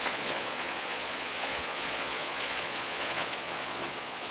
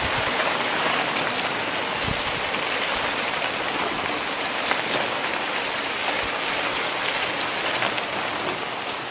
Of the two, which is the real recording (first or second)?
second